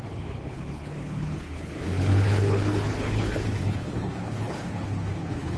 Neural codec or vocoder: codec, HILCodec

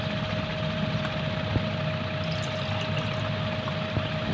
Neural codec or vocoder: none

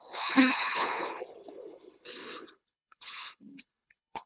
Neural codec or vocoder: codec, HILCodec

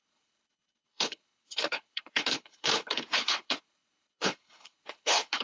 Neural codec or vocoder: codec, HILCodec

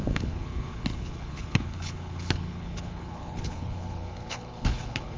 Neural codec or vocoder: codec, HILCodec